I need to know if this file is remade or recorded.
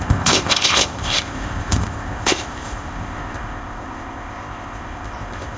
remade